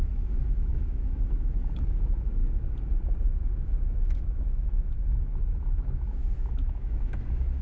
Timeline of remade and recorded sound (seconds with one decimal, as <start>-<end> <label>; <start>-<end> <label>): 0.0-2.4 remade; 2.4-3.3 recorded; 3.3-7.6 remade